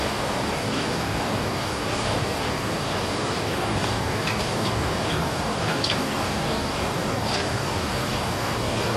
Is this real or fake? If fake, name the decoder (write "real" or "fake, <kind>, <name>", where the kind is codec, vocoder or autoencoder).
fake, codec, DAC